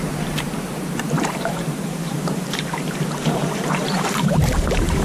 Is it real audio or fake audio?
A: fake